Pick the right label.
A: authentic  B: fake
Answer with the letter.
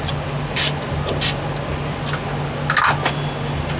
A